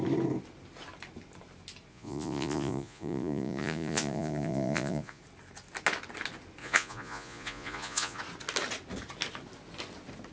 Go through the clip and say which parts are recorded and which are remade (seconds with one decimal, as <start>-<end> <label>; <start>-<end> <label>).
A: 0.0-1.9 recorded; 1.9-5.2 remade; 5.2-6.6 recorded; 6.6-8.2 remade; 8.2-10.3 recorded